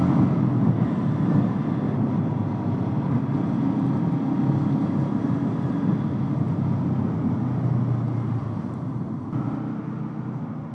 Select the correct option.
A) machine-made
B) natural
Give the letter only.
B